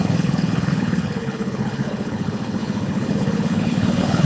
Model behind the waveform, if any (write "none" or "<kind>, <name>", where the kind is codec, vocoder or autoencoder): codec, HILCodec